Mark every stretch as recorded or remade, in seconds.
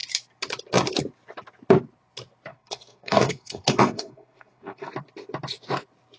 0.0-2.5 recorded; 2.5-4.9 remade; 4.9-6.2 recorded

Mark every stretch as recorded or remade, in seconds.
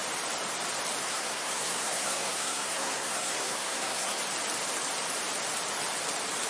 0.0-1.0 recorded; 1.0-4.2 remade; 4.2-6.5 recorded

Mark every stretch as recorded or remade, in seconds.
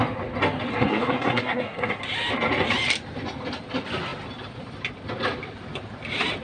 0.0-0.7 recorded; 0.7-2.0 remade; 2.0-6.4 recorded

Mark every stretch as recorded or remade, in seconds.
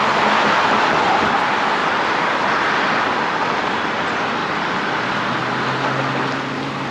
0.0-6.9 recorded